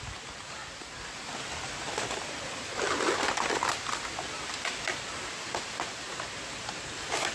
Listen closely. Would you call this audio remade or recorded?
recorded